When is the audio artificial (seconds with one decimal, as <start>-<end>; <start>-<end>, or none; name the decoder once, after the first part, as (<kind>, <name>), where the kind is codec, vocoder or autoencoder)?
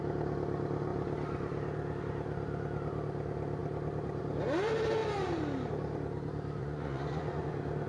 6.6-7.5 (vocoder, Vocos)